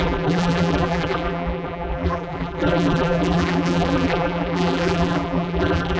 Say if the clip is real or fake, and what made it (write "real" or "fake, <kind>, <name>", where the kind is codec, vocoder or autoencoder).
fake, vocoder, BigVGAN v2